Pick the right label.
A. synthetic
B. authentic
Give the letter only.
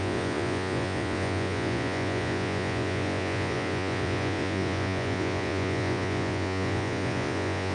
A